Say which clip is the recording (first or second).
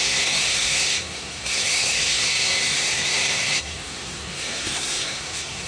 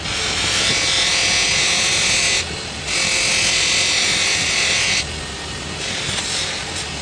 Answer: second